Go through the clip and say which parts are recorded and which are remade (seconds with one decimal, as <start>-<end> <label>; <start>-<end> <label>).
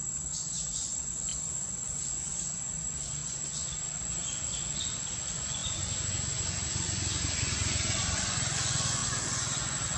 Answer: 0.0-10.0 remade